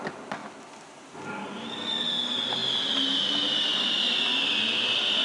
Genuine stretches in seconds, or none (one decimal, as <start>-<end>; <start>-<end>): 0.0-5.2